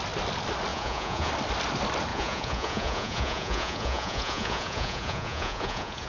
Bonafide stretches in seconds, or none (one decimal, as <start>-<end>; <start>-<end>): 0.0-0.7; 1.3-2.1